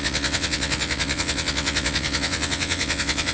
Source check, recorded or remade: remade